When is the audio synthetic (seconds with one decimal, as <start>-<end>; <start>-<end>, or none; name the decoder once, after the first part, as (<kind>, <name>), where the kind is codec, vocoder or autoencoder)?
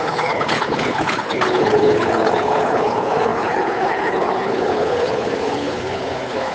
0.0-6.5 (codec, HILCodec)